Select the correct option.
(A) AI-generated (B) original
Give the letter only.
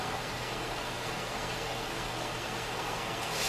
A